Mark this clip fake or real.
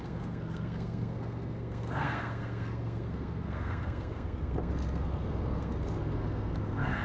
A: fake